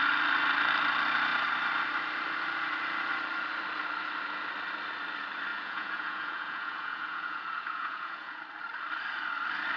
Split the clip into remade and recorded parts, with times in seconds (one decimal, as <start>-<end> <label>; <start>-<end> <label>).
0.0-5.5 recorded; 5.5-8.4 remade; 8.4-9.8 recorded